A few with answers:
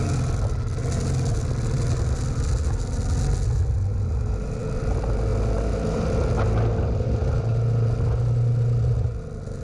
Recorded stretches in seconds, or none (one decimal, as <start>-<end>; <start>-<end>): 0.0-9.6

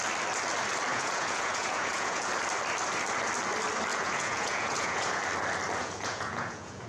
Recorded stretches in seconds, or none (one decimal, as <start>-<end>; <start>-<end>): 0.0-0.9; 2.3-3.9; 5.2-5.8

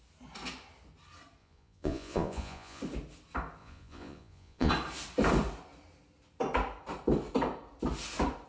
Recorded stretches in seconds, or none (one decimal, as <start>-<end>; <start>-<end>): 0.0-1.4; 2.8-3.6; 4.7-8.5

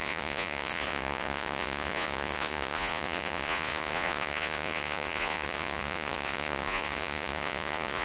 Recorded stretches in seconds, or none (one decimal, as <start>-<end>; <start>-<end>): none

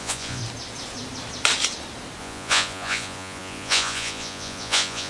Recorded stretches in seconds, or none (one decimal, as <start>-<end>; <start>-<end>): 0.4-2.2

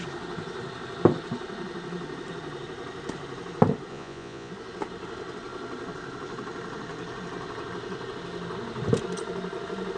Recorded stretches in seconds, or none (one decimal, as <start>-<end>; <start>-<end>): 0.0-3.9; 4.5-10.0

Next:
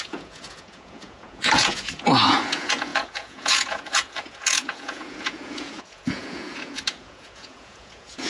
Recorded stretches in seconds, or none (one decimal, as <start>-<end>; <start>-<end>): none

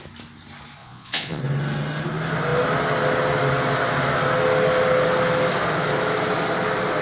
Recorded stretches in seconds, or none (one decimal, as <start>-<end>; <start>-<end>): 0.0-0.8; 1.4-7.0